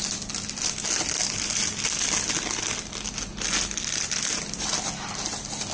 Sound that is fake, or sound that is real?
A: real